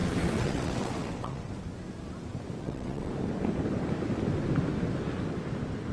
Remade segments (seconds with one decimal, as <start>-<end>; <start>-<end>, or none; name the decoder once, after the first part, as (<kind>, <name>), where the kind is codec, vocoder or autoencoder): 0.0-1.5 (vocoder, WaveNeXt); 2.6-3.1